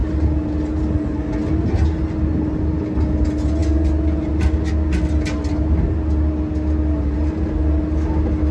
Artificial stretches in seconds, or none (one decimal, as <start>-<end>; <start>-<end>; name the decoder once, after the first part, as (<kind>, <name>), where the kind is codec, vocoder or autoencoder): none